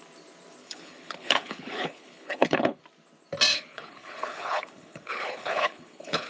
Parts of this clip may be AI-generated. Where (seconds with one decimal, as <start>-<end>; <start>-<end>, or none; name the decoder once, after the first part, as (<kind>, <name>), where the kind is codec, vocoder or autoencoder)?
0.6-2.8 (codec, HILCodec); 3.5-6.3